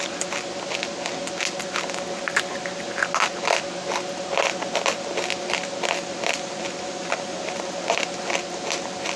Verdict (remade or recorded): recorded